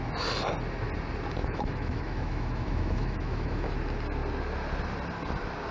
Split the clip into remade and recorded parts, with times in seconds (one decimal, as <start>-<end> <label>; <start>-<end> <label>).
0.0-1.4 recorded; 1.4-3.7 remade; 3.7-5.7 recorded

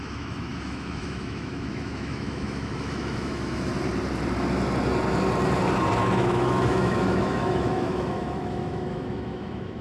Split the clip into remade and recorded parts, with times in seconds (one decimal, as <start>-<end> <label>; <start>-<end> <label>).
0.0-3.7 remade; 3.7-6.2 recorded; 6.2-9.8 remade

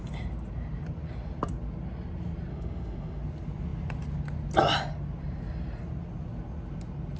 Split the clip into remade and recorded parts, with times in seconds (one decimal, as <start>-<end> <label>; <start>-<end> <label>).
0.0-2.5 recorded; 2.5-3.2 remade; 3.2-7.2 recorded

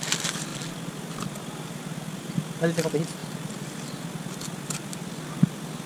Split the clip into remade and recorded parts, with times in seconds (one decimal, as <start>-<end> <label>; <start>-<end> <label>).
0.0-5.9 recorded

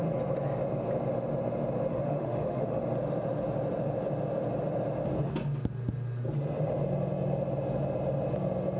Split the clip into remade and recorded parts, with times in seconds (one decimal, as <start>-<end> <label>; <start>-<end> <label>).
0.0-1.9 recorded; 1.9-2.8 remade; 2.8-8.8 recorded

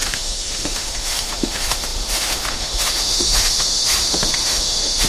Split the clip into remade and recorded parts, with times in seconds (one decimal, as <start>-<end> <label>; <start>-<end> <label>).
0.0-5.1 remade

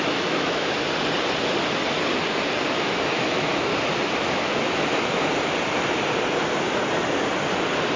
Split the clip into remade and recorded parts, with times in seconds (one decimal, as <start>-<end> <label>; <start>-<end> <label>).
0.0-0.8 remade; 0.8-2.7 recorded; 2.7-3.7 remade; 3.7-4.2 recorded; 4.2-4.9 remade; 4.9-8.0 recorded

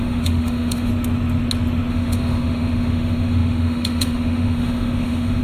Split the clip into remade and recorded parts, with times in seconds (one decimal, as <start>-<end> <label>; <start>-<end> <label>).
0.0-0.9 remade; 0.9-1.9 recorded; 1.9-5.4 remade